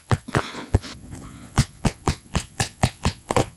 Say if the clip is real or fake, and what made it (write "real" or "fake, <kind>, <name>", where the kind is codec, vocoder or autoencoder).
fake, vocoder, Vocos